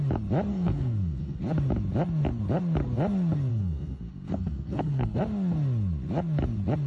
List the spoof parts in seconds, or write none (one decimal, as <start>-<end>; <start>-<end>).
0.5-1.4; 3.5-5.2